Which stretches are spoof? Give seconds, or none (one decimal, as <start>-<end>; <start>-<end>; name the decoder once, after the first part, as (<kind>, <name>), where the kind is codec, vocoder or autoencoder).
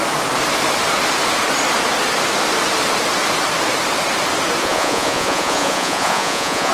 4.6-6.7 (vocoder, Vocos)